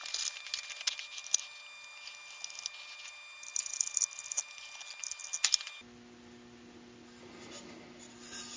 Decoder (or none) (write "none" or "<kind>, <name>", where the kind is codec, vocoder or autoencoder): none